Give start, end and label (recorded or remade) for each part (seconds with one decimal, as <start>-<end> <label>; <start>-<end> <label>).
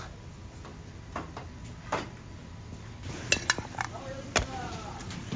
0.0-5.4 recorded